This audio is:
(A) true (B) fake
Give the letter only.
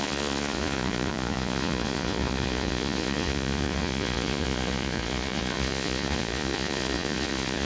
B